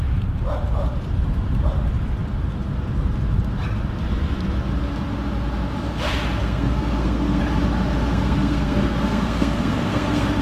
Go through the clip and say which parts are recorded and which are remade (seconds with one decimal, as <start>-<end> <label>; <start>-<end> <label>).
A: 0.0-6.4 recorded; 6.4-7.4 remade; 7.4-8.1 recorded; 8.1-10.4 remade